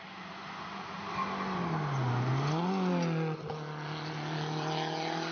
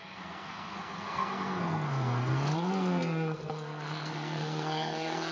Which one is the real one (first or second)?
first